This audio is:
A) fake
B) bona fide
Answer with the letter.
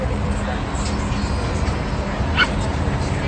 B